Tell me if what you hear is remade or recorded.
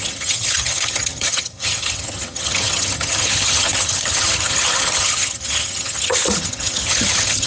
remade